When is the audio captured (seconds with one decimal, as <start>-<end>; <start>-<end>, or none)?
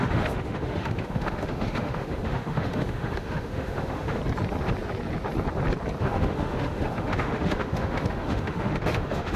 4.2-6.0